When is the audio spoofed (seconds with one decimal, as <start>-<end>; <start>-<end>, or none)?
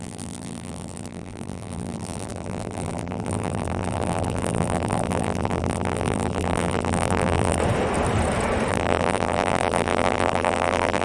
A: 0.0-7.6; 8.7-11.0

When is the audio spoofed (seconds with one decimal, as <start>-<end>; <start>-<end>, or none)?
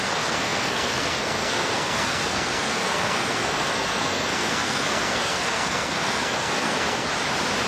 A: 0.0-7.1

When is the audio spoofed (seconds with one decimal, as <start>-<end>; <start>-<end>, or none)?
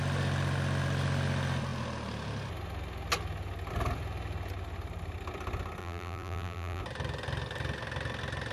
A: 5.8-6.8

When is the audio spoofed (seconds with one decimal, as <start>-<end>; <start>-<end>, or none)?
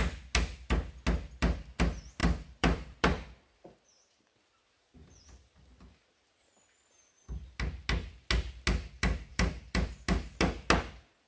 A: 2.2-4.2; 9.3-9.9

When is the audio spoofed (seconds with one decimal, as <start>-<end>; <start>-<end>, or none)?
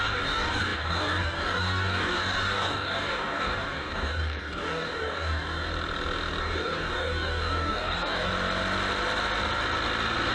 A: 0.0-5.7; 6.4-8.3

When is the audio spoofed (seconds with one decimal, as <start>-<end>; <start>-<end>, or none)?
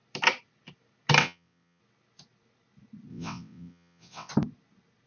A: 1.2-1.8; 3.1-4.3